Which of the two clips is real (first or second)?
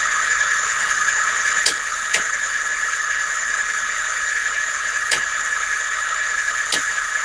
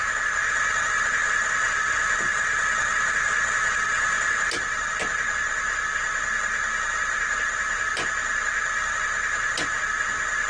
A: second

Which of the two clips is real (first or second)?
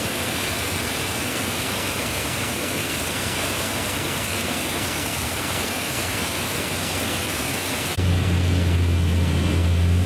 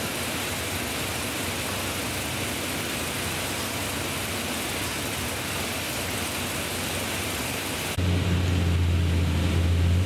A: second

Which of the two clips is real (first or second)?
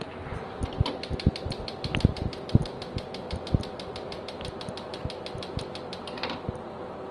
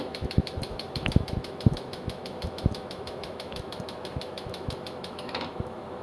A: first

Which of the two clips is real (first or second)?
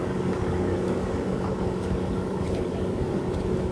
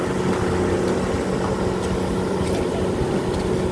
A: second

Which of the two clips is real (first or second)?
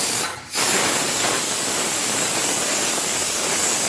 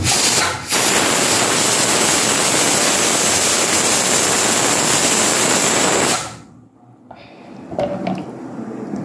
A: second